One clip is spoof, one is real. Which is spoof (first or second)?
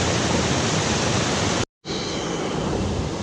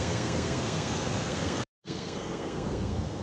second